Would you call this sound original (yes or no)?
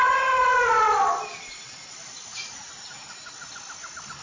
yes